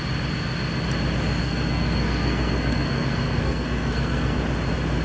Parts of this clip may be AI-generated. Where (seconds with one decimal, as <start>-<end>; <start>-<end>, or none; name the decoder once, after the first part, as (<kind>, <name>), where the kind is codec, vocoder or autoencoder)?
1.4-4.4 (codec, SNAC)